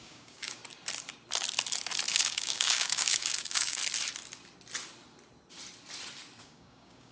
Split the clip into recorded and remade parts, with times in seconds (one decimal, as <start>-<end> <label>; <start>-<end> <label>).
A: 0.0-0.6 remade; 0.6-2.1 recorded; 2.1-3.8 remade; 3.8-6.4 recorded; 6.4-7.1 remade